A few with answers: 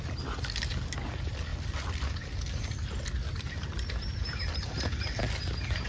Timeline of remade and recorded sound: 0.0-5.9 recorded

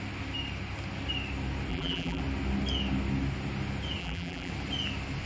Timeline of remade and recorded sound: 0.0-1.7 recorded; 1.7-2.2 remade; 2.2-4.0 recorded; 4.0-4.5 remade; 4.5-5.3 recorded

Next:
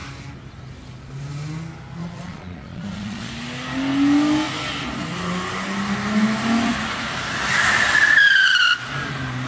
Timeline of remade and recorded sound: 0.0-2.0 recorded; 2.0-3.3 remade; 3.3-9.5 recorded

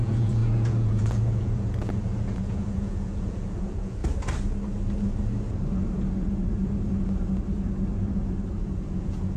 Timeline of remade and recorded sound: 0.0-4.0 remade; 4.0-9.0 recorded; 9.0-9.4 remade